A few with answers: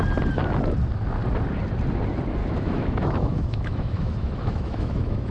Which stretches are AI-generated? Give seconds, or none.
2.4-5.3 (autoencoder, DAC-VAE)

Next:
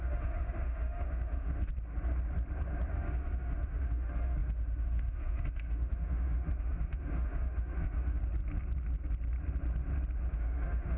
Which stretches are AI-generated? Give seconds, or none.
0.0-1.7 (autoencoder, DAC-VAE); 2.9-8.2; 10.3-11.0

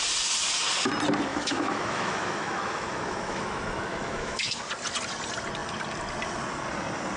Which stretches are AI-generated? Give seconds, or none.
1.3-4.6 (autoencoder, DAC-VAE)

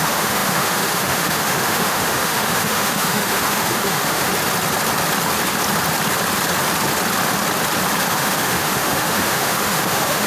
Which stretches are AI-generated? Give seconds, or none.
0.0-4.3 (autoencoder, DAC-VAE); 8.1-10.3

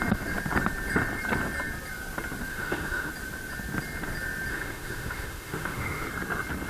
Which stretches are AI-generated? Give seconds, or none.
2.5-3.1 (autoencoder, DAC-VAE); 4.5-6.1

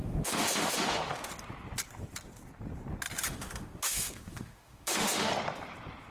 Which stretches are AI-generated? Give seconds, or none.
0.0-1.3 (autoencoder, DAC-VAE); 3.3-5.3

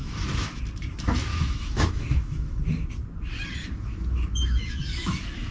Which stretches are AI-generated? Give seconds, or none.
0.0-0.6 (autoencoder, DAC-VAE); 1.3-2.9; 3.6-5.5

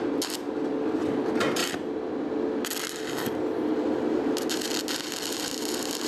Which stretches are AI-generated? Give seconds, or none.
none